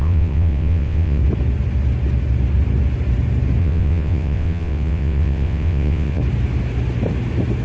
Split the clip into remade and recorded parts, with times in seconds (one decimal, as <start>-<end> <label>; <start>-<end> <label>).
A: 0.0-1.2 remade; 1.2-3.6 recorded; 3.6-6.2 remade; 6.2-7.6 recorded